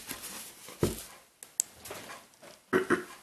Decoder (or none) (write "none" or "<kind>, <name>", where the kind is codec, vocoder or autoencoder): none